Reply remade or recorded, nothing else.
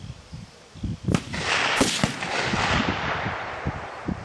recorded